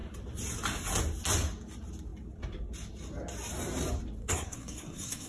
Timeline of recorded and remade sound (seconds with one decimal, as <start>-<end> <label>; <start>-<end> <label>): 0.0-4.2 recorded; 4.2-5.3 remade